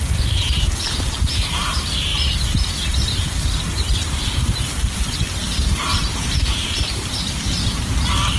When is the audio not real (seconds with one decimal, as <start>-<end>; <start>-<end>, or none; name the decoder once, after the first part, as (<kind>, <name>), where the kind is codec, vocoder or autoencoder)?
0.0-8.4 (vocoder, BigVGAN v2)